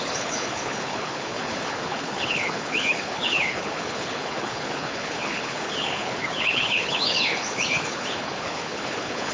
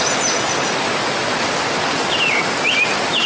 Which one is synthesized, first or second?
first